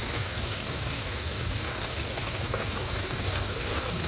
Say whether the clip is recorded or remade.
remade